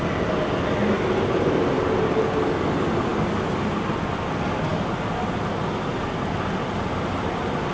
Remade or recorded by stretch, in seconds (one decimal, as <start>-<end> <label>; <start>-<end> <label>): 0.0-7.7 recorded